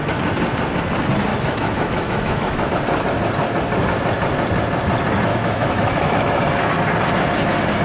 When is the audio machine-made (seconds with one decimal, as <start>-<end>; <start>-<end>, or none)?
1.3-2.7; 5.3-6.4